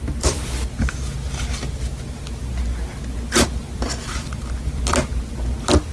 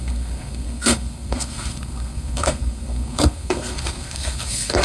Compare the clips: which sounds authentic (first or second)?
first